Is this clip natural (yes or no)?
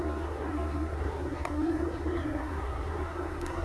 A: no